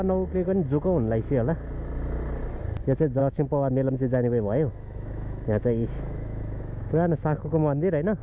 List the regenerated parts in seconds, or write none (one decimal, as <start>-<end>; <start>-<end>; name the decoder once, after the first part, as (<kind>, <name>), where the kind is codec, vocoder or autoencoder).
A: 3.2-8.2 (autoencoder, DAC-VAE)